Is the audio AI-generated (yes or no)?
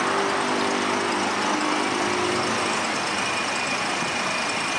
no